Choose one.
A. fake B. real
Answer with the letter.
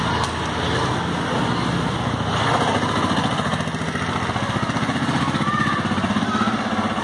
B